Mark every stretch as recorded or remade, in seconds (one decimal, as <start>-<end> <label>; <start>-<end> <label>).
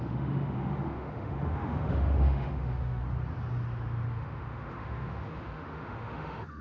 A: 0.0-3.0 remade; 3.0-4.1 recorded; 4.1-6.6 remade